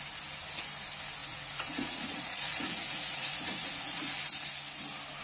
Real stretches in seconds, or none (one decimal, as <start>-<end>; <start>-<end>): 0.0-1.2; 4.2-5.2